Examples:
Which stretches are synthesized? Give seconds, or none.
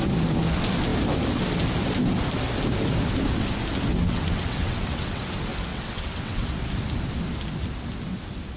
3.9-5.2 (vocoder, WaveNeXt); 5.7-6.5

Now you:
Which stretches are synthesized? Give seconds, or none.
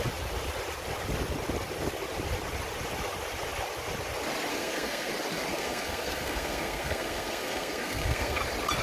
4.5-5.1 (codec, SNAC); 5.5-8.4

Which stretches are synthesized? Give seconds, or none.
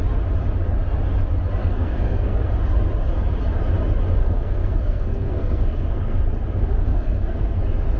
1.6-2.5 (codec, SNAC); 4.2-6.2; 6.8-7.6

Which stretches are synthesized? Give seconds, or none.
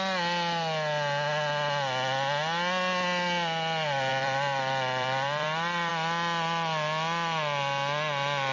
4.1-5.9 (vocoder, BigVGAN v2)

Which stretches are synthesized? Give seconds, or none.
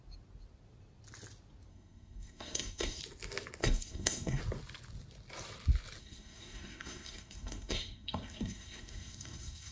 1.7-3.0 (codec, SNAC); 3.6-4.4; 6.0-9.7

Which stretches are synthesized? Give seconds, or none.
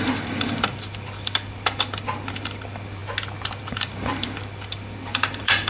0.0-3.0 (vocoder, BigVGAN v2); 3.6-5.7